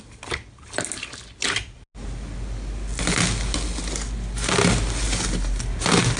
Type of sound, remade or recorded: recorded